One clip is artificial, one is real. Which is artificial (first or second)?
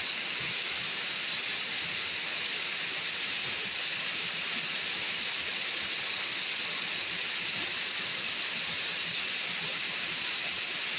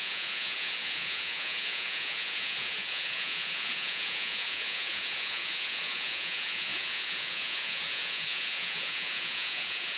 second